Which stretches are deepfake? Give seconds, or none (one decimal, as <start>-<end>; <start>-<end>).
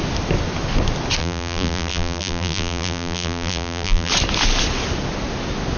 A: 1.2-4.1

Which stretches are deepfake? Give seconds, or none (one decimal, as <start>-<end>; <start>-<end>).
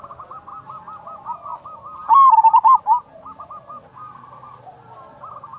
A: none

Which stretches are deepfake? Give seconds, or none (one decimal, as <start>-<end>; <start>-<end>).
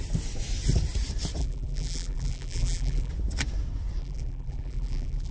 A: 1.4-3.1; 4.0-5.3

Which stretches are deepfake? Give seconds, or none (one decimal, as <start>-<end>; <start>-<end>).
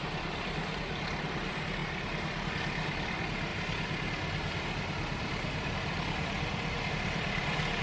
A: 0.0-1.8; 2.5-3.5; 6.9-7.8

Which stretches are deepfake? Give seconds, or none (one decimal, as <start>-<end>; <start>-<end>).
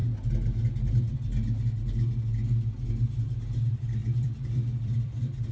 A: 0.9-1.3; 2.9-5.5